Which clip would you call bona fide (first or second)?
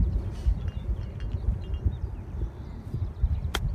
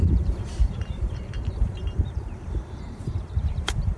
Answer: first